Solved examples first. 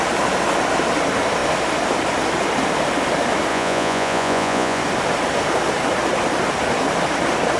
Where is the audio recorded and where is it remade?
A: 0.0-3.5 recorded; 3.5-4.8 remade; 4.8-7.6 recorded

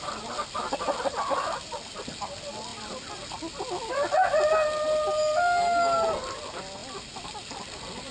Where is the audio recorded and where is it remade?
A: 0.0-8.1 recorded

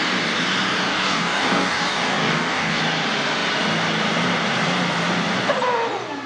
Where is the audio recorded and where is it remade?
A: 0.0-0.9 recorded; 0.9-2.8 remade; 2.8-6.3 recorded

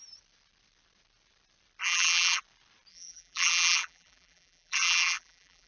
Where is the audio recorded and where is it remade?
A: 0.0-1.8 recorded; 1.8-2.4 remade; 2.4-2.9 recorded; 2.9-5.7 remade

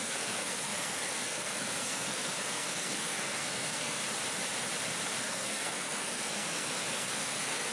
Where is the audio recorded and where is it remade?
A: 0.0-4.0 remade; 4.0-5.2 recorded; 5.2-7.7 remade

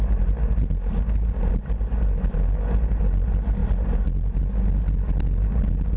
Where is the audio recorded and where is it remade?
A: 0.0-6.0 recorded